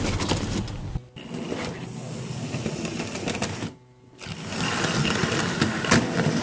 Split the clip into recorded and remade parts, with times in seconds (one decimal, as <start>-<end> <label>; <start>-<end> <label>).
0.0-6.4 recorded